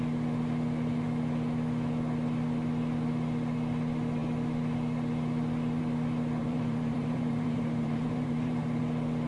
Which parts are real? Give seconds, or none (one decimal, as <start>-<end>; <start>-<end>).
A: 0.0-6.4; 8.8-9.3